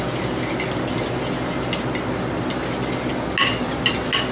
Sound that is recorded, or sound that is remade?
recorded